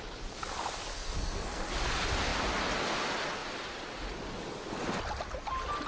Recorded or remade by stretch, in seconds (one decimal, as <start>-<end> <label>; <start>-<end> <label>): 0.0-0.9 recorded; 0.9-1.7 remade; 1.7-5.9 recorded